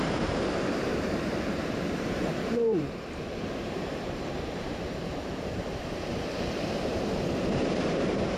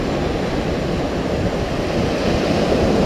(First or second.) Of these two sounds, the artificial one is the first